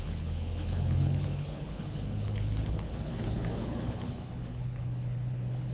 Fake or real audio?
fake